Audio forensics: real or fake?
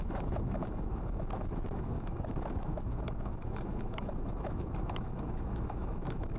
fake